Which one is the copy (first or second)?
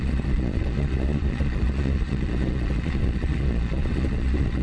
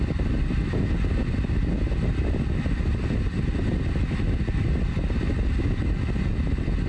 first